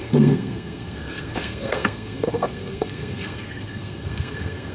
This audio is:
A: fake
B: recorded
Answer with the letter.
A